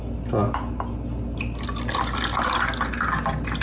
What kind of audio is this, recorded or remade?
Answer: recorded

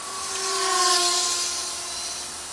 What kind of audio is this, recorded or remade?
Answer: recorded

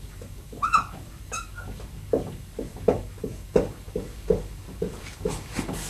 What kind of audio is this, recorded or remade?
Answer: remade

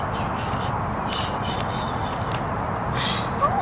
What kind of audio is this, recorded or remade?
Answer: recorded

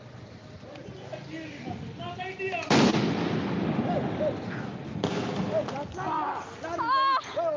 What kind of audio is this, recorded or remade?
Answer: recorded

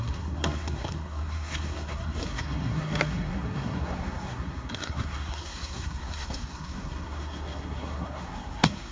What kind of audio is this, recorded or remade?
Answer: remade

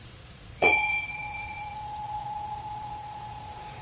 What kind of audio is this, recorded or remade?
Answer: remade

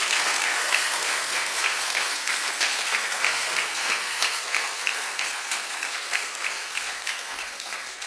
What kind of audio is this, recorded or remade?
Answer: remade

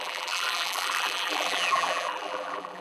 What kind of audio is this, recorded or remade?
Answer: remade